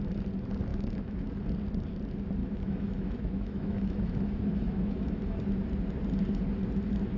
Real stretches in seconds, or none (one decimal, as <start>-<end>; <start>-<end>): 0.0-0.7; 1.3-2.4; 5.4-7.2